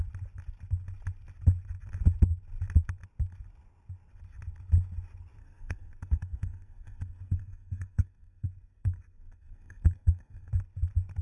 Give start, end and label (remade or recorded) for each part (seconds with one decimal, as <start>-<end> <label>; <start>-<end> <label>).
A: 0.0-5.4 recorded; 5.4-10.5 remade; 10.5-11.2 recorded